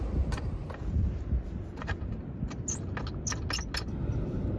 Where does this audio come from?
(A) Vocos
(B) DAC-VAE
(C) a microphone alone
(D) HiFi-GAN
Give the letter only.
C